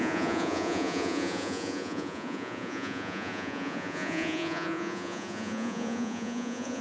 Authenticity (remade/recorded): remade